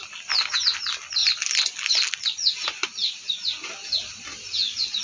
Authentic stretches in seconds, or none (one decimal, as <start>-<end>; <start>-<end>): 0.0-5.0